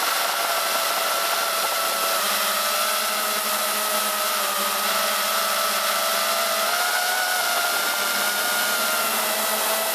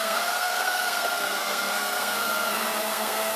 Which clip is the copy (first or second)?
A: second